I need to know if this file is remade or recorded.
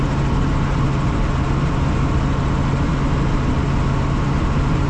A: recorded